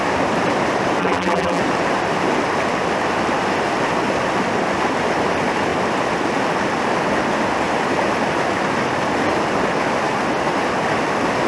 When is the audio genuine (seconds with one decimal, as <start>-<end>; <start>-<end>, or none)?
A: 0.0-1.0; 1.6-11.5